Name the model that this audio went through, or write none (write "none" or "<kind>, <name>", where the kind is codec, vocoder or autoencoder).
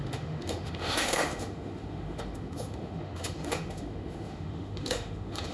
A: autoencoder, DAC-VAE